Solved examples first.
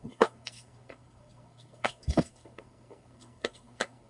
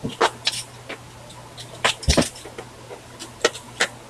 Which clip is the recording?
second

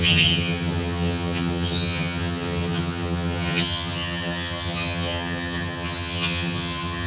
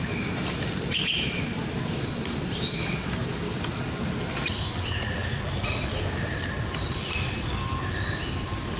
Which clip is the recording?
second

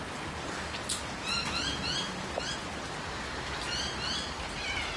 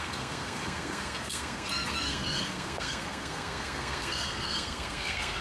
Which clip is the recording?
first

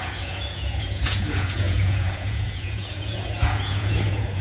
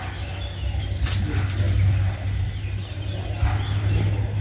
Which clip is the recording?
second